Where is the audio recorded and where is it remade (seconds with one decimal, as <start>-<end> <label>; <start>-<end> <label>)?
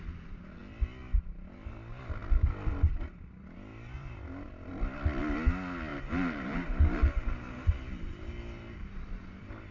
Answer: 0.0-5.9 recorded; 5.9-7.7 remade; 7.7-9.7 recorded